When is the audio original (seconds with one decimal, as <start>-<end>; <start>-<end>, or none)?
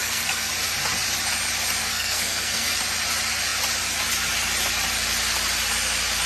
0.5-1.8; 2.8-6.3